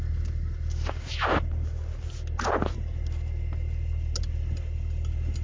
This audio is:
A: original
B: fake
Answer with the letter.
A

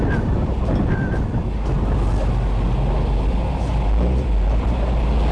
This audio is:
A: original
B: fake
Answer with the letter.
A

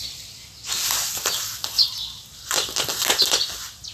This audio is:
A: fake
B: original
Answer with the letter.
B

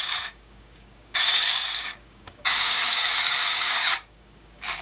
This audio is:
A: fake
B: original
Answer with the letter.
A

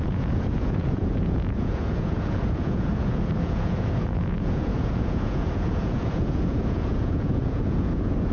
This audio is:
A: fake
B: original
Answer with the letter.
A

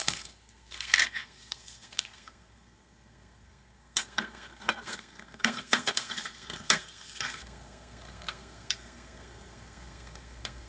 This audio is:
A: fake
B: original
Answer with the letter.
A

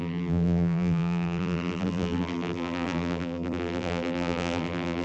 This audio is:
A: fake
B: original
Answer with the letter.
A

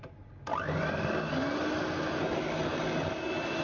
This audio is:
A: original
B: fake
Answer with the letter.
A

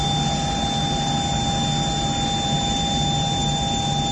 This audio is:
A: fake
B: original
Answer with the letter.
B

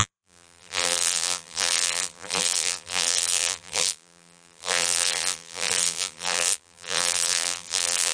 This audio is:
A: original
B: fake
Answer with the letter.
B